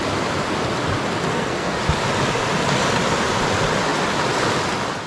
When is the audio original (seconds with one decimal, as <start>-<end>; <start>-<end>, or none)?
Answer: 0.0-1.3; 1.8-5.1